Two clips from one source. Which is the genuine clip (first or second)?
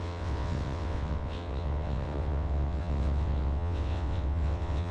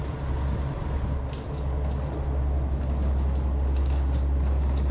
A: second